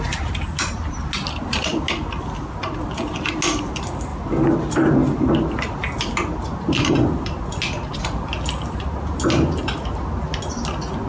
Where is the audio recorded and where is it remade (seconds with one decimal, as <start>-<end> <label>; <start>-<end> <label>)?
0.0-11.1 recorded